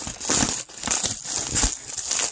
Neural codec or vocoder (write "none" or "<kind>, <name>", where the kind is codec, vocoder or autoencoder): none